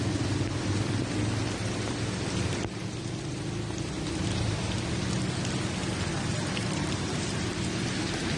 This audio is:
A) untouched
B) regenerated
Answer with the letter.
A